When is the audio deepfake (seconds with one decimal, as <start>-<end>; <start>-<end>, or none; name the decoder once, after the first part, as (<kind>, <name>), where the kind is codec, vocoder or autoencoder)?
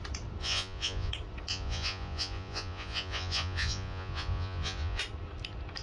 0.4-1.1 (vocoder, Vocos); 1.5-5.0